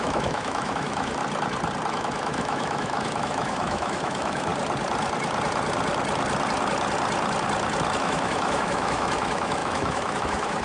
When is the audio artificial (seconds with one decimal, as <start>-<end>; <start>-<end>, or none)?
0.0-1.2; 1.9-4.5; 8.0-10.6